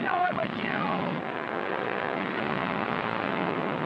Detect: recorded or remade remade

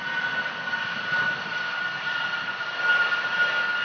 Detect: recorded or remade recorded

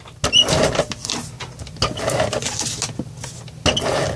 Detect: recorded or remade recorded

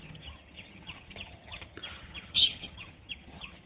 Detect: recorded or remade remade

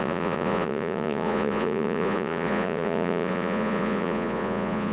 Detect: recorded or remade remade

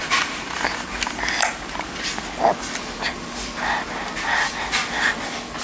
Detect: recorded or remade recorded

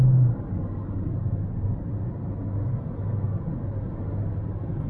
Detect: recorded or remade recorded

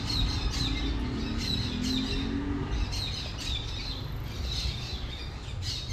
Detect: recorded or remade recorded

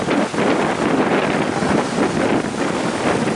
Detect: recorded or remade recorded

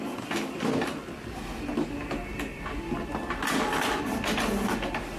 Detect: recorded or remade recorded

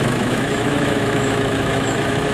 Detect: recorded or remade remade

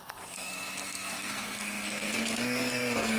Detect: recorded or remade remade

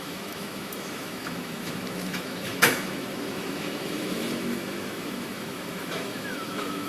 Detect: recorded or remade remade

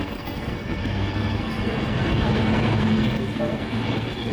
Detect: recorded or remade remade